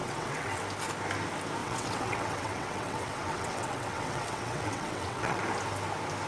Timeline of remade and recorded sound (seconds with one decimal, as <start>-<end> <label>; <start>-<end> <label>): 0.0-0.6 remade; 0.6-1.6 recorded; 1.6-5.4 remade; 5.4-6.3 recorded